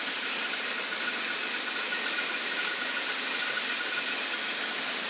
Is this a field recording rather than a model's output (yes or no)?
yes